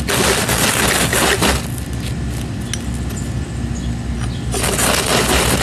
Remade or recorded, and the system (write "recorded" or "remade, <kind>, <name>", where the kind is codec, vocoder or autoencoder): recorded